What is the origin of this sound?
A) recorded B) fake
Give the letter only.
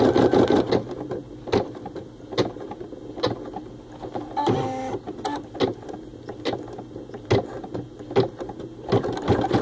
A